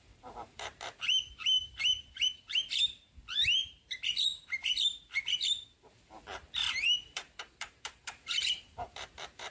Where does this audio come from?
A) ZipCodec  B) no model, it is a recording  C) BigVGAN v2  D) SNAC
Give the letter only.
C